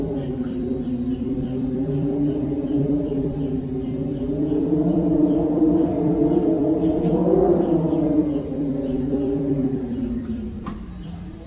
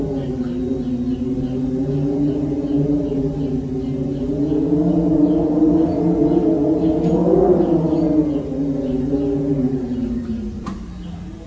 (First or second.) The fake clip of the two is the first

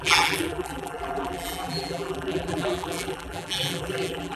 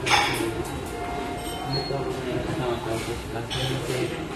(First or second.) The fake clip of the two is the first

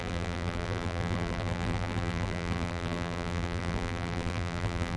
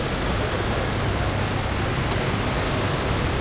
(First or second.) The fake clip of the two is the first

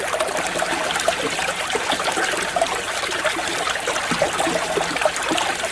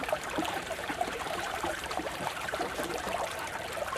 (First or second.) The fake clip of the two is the second